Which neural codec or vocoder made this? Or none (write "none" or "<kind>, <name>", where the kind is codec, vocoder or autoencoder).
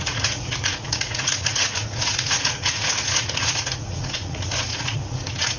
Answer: vocoder, Vocos